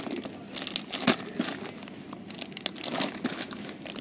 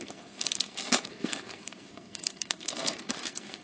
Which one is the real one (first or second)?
first